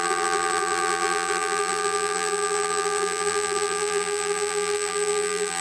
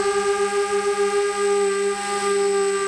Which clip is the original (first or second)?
second